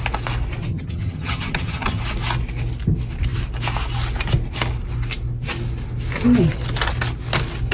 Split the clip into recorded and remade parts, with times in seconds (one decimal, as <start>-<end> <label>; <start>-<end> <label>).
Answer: 0.0-0.6 recorded; 0.6-2.0 remade; 2.0-7.7 recorded